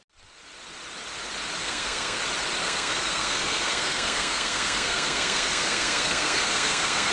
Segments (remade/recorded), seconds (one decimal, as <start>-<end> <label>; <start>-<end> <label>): 0.0-1.6 recorded; 1.6-2.2 remade; 2.2-2.6 recorded; 2.6-7.1 remade